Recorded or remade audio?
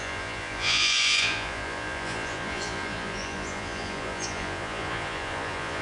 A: remade